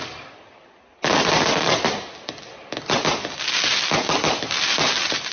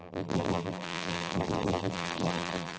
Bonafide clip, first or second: first